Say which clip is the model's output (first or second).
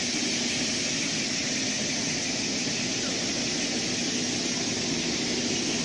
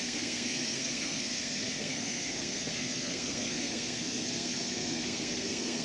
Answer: second